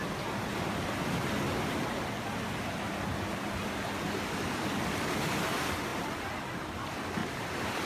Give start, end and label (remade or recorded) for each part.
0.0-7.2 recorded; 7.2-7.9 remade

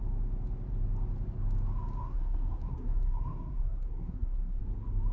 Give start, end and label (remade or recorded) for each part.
0.0-2.0 recorded; 2.0-4.6 remade; 4.6-5.1 recorded

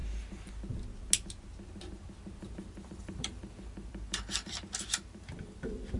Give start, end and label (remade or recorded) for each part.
0.0-2.9 recorded; 2.9-6.0 remade

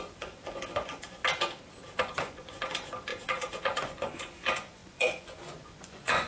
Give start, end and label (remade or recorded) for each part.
0.0-1.2 remade; 1.2-2.0 recorded; 2.0-6.3 remade